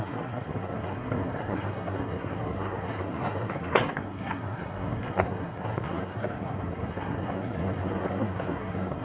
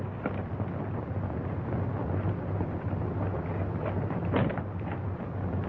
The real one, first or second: second